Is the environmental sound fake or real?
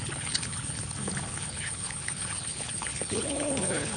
fake